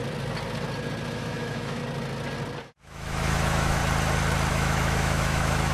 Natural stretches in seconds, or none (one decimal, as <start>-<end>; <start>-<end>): 0.0-1.1; 1.8-2.6; 3.8-4.5